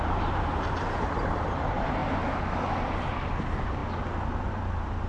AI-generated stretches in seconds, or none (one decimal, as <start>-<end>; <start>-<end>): 0.0-2.0; 3.1-3.8; 4.4-5.1